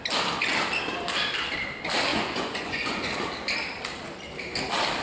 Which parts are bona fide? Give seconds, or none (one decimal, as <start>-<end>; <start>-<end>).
0.0-2.1; 3.1-5.0